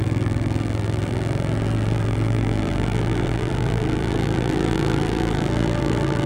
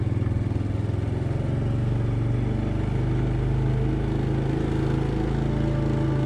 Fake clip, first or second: first